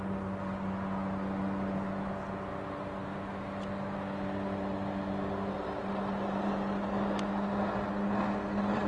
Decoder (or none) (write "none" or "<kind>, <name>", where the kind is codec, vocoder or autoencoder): none